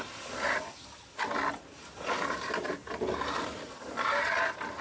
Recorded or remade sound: recorded